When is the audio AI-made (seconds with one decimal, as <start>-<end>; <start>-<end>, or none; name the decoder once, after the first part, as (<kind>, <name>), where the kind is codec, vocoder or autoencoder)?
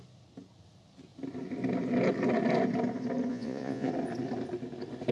3.3-3.9 (vocoder, Vocos)